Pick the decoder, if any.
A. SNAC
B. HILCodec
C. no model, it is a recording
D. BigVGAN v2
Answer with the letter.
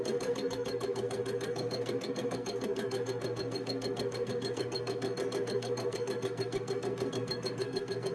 A